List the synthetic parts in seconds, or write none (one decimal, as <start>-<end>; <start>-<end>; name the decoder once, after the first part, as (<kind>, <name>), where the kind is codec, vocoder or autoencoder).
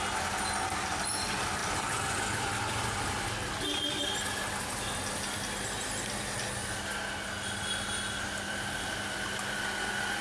none